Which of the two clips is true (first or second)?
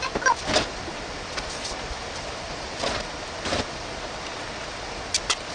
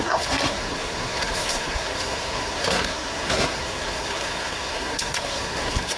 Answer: first